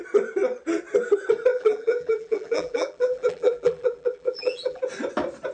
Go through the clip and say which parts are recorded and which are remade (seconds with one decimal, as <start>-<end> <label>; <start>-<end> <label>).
0.0-1.5 recorded; 1.5-4.8 remade; 4.8-5.5 recorded